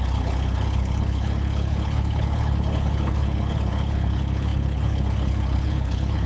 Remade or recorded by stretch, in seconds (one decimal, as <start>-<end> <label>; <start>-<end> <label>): 0.0-6.3 remade